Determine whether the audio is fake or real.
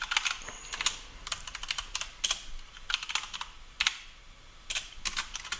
real